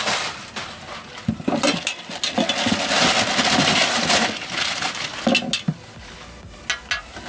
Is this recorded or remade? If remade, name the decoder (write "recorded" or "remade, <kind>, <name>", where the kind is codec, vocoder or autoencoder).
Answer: recorded